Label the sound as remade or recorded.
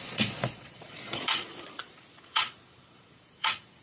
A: remade